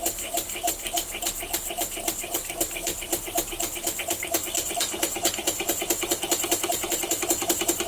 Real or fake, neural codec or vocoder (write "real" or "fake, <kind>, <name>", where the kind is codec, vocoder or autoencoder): real